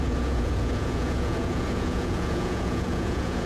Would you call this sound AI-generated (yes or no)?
yes